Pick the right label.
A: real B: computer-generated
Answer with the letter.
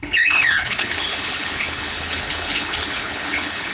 B